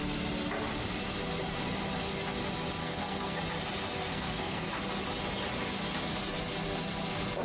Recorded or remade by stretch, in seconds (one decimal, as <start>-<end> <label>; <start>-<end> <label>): 0.0-2.8 recorded; 2.8-3.4 remade; 3.4-4.1 recorded; 4.1-4.7 remade; 4.7-7.4 recorded